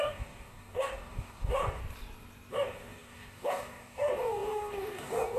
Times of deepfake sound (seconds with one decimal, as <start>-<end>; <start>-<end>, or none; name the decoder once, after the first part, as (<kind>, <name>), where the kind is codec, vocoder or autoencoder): 0.0-1.8 (codec, DAC); 2.5-5.4